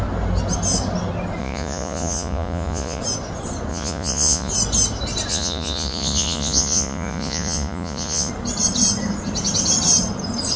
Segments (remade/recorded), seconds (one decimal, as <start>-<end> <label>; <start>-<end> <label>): 0.0-1.4 recorded; 1.4-3.0 remade; 3.0-3.7 recorded; 3.7-4.5 remade; 4.5-5.3 recorded; 5.3-8.3 remade; 8.3-10.6 recorded